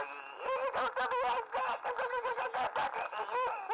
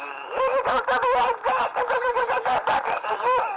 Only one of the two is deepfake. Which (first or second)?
second